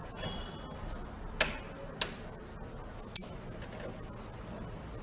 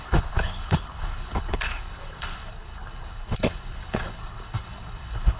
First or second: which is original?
first